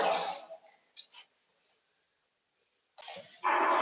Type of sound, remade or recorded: recorded